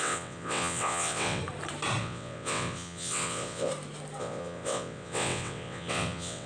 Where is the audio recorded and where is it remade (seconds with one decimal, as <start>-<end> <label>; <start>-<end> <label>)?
0.0-1.4 remade; 1.4-2.0 recorded; 2.0-3.7 remade; 3.7-4.2 recorded; 4.2-6.5 remade